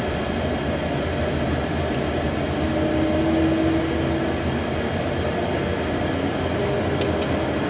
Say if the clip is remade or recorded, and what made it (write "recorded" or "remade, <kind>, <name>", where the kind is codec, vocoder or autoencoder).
recorded